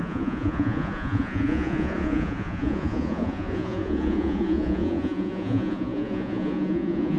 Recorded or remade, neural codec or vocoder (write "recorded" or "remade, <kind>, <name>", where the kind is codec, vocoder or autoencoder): remade, vocoder, Vocos